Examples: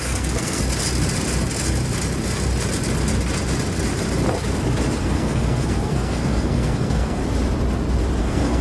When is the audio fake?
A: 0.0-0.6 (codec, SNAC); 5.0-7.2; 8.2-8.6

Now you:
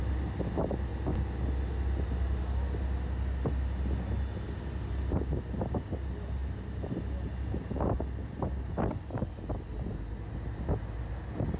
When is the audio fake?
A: none

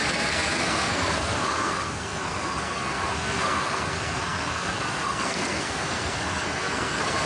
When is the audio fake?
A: 0.0-7.3 (codec, SNAC)

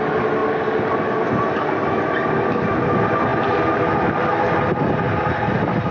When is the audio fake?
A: none

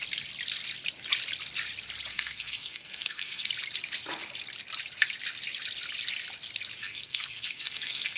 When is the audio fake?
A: 2.1-3.5 (codec, SNAC); 6.8-8.2

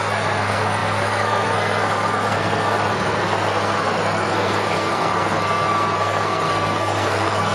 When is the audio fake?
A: 0.0-7.5 (codec, SNAC)

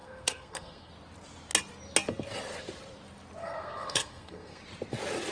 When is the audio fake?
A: 0.0-0.9 (codec, SNAC); 3.4-4.6

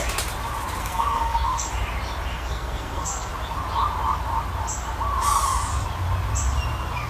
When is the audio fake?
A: 0.8-1.7 (codec, SNAC); 2.3-3.3